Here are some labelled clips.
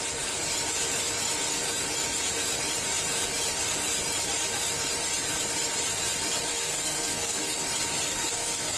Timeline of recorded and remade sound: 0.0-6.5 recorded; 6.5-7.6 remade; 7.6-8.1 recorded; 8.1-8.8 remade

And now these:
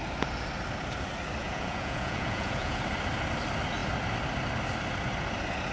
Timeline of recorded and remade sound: 0.0-1.4 recorded; 1.4-2.8 remade; 2.8-5.7 recorded

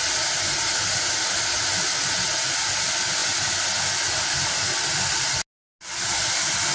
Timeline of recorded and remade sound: 0.0-6.7 recorded

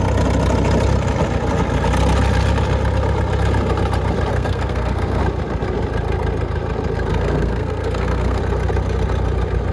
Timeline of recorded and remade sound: 0.0-4.3 recorded; 4.3-5.2 remade; 5.2-7.1 recorded; 7.1-8.4 remade; 8.4-9.7 recorded

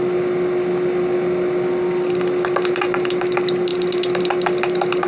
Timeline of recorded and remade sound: 0.0-5.1 recorded

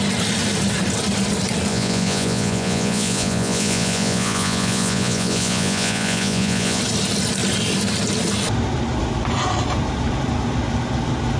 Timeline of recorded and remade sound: 0.0-1.7 recorded; 1.7-6.8 remade; 6.8-11.4 recorded

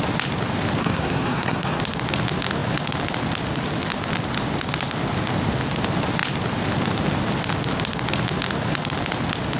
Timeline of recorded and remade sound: 0.0-0.8 recorded; 0.8-1.8 remade; 1.8-9.6 recorded

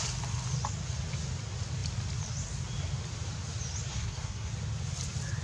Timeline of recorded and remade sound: 0.0-3.9 recorded; 3.9-4.5 remade; 4.5-5.4 recorded